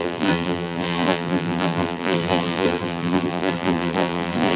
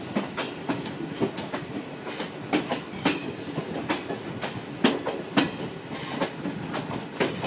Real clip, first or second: second